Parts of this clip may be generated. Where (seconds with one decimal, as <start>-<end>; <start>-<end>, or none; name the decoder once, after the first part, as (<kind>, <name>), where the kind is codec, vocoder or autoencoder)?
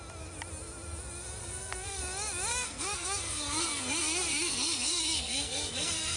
1.4-2.0 (codec, SNAC); 2.5-6.2